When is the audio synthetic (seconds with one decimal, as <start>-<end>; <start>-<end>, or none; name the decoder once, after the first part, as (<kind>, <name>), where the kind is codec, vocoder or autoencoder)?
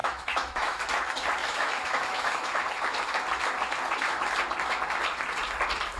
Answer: 0.0-0.8 (autoencoder, DAC-VAE); 1.4-2.6